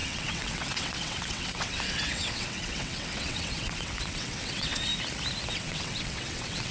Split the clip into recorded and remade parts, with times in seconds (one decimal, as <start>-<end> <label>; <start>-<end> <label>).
0.0-4.9 remade; 4.9-5.5 recorded; 5.5-6.7 remade